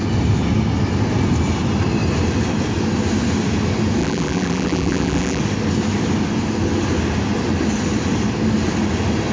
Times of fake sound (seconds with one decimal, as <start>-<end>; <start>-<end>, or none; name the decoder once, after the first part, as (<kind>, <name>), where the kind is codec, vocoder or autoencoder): 4.0-5.4 (vocoder, BigVGAN v2)

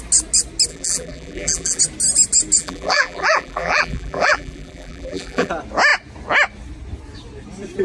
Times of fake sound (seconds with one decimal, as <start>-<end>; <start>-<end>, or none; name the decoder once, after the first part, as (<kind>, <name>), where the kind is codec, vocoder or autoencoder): 0.7-1.8 (vocoder, BigVGAN v2); 2.6-5.5

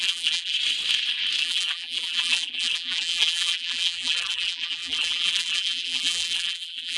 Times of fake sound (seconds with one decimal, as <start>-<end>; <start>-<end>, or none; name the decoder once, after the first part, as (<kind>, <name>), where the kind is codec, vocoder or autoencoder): 0.0-0.5 (vocoder, BigVGAN v2); 1.4-7.0

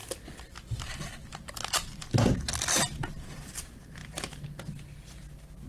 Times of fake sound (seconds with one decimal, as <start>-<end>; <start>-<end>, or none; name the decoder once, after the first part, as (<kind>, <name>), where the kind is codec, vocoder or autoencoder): none

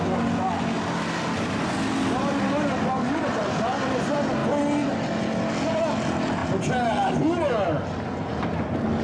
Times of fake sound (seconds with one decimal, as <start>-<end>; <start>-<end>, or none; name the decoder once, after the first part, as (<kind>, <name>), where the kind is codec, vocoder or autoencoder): none

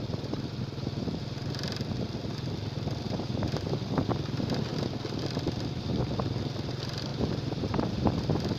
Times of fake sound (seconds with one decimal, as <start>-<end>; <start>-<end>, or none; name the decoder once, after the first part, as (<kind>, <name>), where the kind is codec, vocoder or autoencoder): 7.1-8.1 (vocoder, BigVGAN v2)

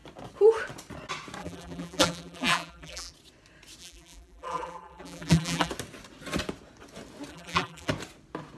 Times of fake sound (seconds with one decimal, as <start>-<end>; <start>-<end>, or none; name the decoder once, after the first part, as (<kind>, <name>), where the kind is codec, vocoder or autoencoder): 1.4-3.1 (vocoder, BigVGAN v2); 3.8-5.7; 7.3-7.9